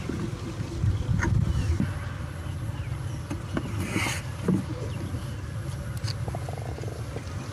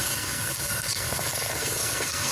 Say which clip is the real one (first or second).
first